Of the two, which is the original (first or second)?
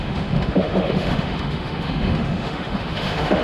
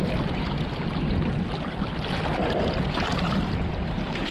second